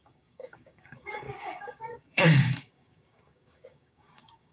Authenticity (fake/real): fake